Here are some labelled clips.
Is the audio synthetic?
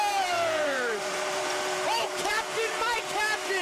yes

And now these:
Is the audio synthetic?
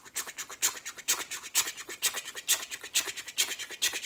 no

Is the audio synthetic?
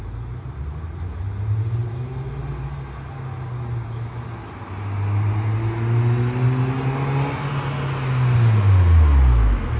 no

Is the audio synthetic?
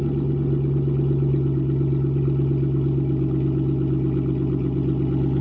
no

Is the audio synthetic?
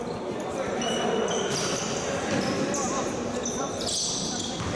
no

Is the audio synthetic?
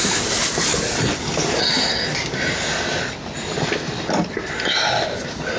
no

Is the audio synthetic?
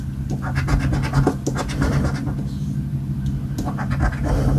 no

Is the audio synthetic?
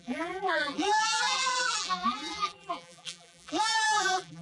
yes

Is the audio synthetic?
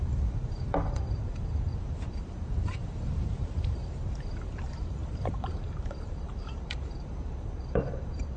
yes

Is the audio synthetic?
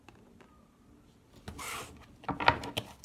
no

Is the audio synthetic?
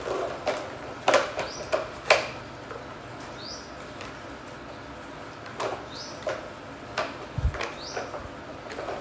no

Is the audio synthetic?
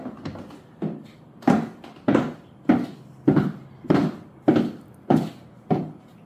no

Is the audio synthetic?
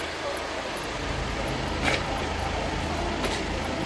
yes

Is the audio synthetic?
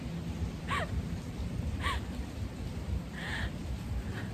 yes